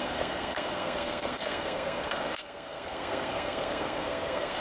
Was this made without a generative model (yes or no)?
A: no